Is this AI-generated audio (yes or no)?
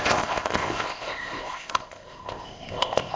yes